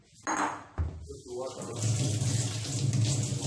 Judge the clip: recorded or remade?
recorded